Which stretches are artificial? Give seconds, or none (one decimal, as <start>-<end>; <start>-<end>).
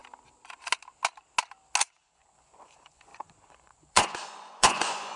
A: 2.0-5.2